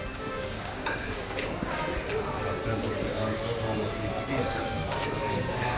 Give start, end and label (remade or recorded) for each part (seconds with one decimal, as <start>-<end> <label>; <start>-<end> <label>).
0.0-1.8 remade; 1.8-3.0 recorded; 3.0-3.4 remade; 3.4-4.6 recorded; 4.6-5.8 remade